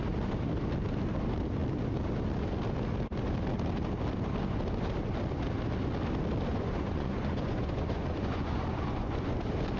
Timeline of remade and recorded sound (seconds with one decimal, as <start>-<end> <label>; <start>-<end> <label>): 0.0-6.5 recorded; 6.5-9.4 remade; 9.4-9.8 recorded